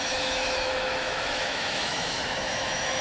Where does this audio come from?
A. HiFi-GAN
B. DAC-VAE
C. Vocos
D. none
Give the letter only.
B